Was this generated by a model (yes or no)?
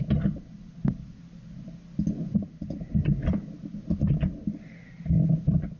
no